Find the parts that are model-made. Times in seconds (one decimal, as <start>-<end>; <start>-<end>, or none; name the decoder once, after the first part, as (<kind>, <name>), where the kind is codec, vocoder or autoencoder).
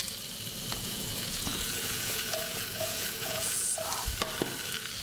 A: 0.7-3.7 (vocoder, Vocos)